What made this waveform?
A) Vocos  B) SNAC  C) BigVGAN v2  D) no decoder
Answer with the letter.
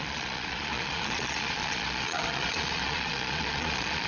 A